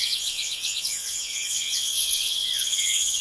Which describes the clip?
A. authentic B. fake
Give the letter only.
B